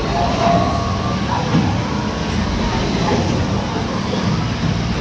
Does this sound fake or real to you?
real